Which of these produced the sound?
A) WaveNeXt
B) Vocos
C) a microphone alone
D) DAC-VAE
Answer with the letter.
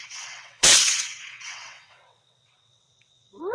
A